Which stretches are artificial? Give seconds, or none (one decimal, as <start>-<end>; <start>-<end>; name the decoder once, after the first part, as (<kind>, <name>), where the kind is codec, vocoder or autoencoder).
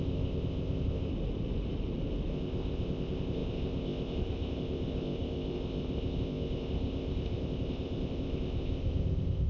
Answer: 0.0-1.1 (codec, ZipCodec); 2.3-9.5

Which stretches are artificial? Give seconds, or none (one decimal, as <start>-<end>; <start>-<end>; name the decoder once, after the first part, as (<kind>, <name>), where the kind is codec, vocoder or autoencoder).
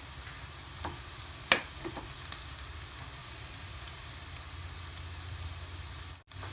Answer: 1.6-2.1 (vocoder, Vocos); 3.2-4.1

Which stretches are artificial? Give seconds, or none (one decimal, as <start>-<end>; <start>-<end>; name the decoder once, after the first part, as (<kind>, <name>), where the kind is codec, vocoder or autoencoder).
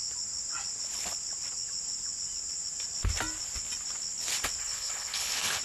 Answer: 4.6-5.6 (codec, HILCodec)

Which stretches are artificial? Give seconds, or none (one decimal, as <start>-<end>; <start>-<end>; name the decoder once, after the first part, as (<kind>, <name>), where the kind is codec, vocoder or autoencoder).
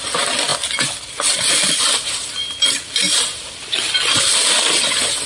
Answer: none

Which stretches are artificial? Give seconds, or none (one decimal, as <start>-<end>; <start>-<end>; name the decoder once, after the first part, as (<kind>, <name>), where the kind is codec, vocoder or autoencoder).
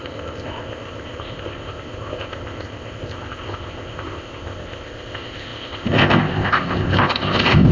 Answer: 0.0-7.7 (codec, ZipCodec)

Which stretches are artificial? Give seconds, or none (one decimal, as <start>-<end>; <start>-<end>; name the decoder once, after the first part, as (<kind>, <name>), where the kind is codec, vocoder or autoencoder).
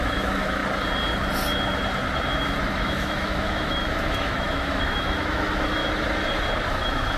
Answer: 0.0-0.6 (autoencoder, DAC-VAE); 2.7-5.8; 6.7-7.2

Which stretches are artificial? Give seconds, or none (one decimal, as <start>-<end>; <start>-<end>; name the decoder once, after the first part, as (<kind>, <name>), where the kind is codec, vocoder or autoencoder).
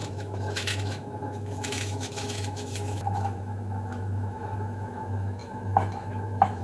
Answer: 0.0-6.6 (autoencoder, DAC-VAE)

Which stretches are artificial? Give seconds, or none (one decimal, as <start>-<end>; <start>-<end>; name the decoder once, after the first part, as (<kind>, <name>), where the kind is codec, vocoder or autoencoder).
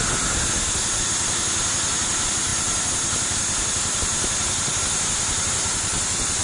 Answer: none